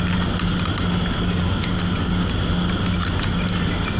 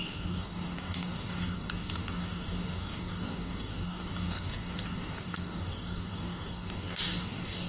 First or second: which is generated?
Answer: second